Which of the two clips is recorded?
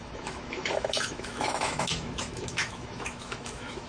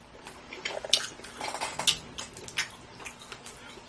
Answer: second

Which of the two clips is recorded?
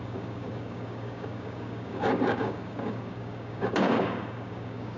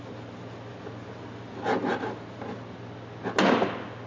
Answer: second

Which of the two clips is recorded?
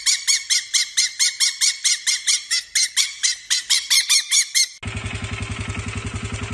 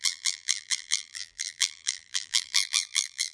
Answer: first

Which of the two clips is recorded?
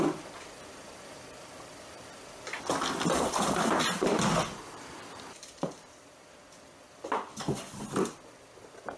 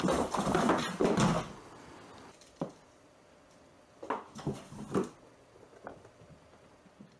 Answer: second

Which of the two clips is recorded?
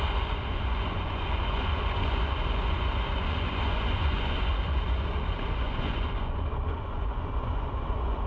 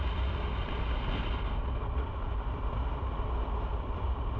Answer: second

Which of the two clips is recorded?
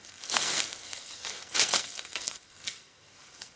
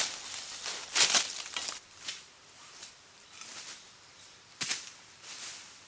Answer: second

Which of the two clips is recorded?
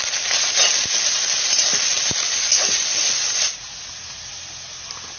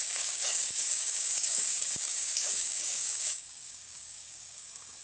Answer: first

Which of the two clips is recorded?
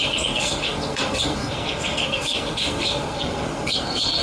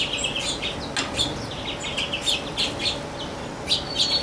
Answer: second